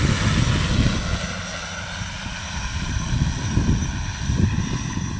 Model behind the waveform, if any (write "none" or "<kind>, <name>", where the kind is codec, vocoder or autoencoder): none